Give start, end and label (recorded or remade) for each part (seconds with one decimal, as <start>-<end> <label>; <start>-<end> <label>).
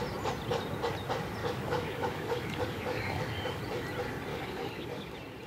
0.0-1.4 recorded; 1.4-3.6 remade; 3.6-4.3 recorded; 4.3-5.1 remade; 5.1-5.5 recorded